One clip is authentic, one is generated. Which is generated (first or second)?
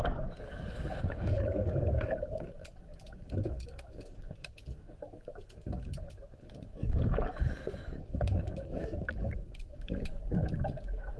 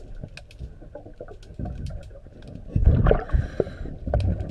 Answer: first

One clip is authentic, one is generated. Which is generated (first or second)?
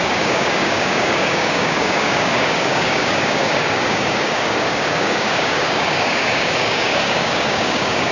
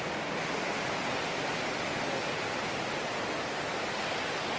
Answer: first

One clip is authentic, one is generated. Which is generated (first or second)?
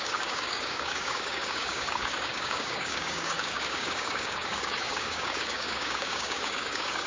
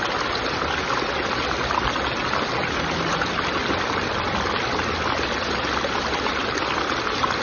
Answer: first